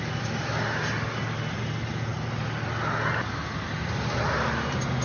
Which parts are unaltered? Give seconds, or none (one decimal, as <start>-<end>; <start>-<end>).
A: 0.0-5.0